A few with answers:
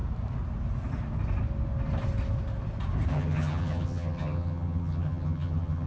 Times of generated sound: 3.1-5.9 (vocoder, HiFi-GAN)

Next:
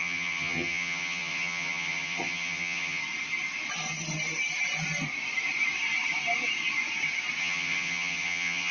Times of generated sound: 0.0-3.0 (vocoder, HiFi-GAN); 7.4-8.7

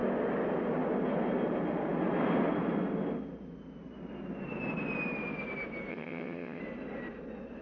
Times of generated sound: 5.9-6.6 (vocoder, HiFi-GAN)

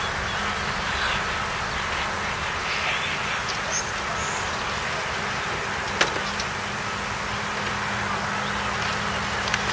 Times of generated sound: none

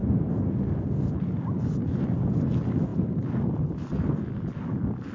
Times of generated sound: none